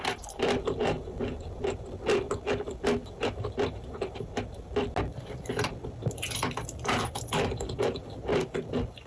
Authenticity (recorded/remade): recorded